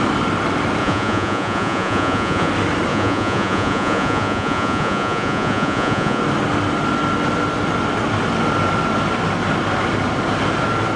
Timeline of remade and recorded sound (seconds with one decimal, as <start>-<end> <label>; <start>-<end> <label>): 0.0-0.8 recorded; 0.8-2.5 remade; 2.5-2.9 recorded; 2.9-6.2 remade; 6.2-11.0 recorded